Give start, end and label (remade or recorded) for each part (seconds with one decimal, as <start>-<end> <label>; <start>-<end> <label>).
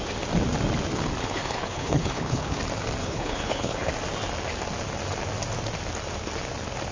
0.0-1.2 recorded; 1.2-2.6 remade; 2.6-3.0 recorded; 3.0-3.9 remade; 3.9-6.9 recorded